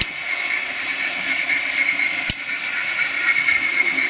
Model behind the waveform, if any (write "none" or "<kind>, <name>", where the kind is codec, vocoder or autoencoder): none